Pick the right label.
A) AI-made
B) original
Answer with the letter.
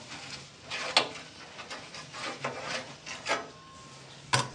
B